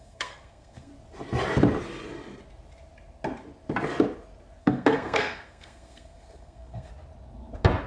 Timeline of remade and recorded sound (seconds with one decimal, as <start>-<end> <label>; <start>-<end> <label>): 0.0-0.9 remade; 0.9-4.6 recorded; 4.6-6.9 remade; 6.9-7.9 recorded